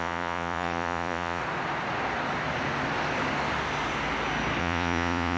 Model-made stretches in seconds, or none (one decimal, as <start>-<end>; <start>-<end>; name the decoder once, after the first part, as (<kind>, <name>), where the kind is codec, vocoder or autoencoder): 0.0-1.4 (vocoder, Vocos); 4.6-5.4